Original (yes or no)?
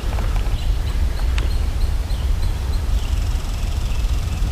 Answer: no